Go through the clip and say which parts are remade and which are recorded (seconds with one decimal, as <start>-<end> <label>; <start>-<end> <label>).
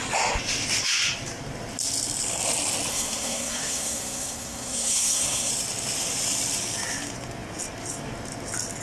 0.0-2.9 recorded; 2.9-5.5 remade; 5.5-8.8 recorded